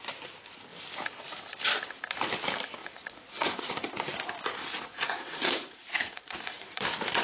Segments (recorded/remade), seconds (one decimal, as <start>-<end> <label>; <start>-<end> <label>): 0.0-2.8 recorded; 2.8-3.9 remade; 3.9-4.6 recorded; 4.6-6.8 remade; 6.8-7.2 recorded